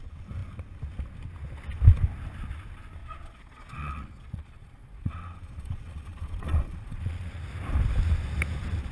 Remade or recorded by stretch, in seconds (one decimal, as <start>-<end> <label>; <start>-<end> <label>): 0.0-3.0 recorded; 3.0-7.4 remade; 7.4-8.9 recorded